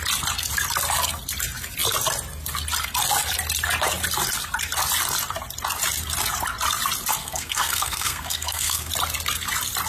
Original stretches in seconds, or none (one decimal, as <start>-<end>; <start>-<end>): 0.0-7.2; 8.9-9.9